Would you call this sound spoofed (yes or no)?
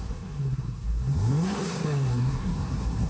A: yes